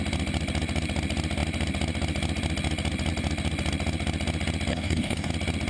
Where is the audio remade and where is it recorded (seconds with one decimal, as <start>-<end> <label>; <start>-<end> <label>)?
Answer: 0.0-4.7 recorded; 4.7-5.3 remade; 5.3-5.7 recorded